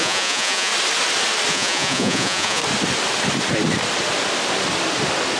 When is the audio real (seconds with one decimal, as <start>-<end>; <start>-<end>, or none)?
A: 0.7-1.5; 2.6-5.4